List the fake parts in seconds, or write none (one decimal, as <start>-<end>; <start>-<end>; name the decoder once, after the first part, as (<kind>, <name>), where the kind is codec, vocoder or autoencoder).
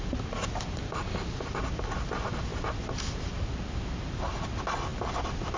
none